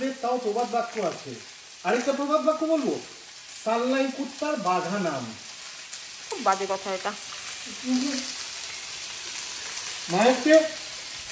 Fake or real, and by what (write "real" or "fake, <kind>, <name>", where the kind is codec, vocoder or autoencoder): real